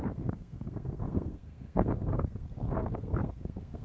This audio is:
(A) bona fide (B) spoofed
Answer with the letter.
B